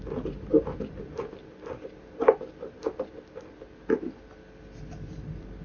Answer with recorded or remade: recorded